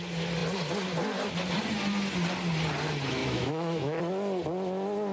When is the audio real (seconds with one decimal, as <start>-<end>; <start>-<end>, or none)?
0.0-3.2; 4.0-5.1